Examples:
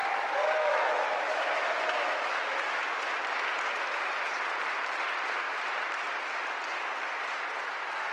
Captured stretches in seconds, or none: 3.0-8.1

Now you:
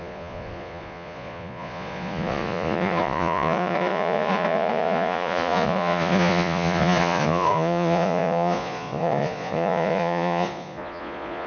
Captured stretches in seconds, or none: none

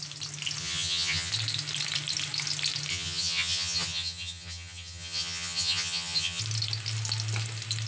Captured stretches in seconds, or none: 0.0-0.6; 1.3-2.9; 6.4-7.9

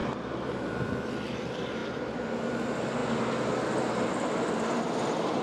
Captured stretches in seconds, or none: 3.0-4.1